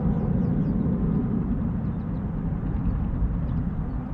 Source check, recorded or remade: recorded